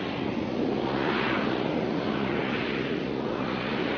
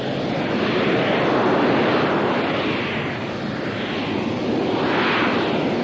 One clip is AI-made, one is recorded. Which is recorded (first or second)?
second